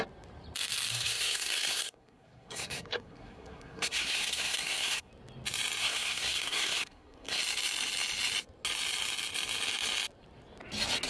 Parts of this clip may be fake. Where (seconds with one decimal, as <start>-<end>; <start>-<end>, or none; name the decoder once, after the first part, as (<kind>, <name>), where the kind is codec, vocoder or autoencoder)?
0.9-5.1 (codec, SNAC); 5.8-7.4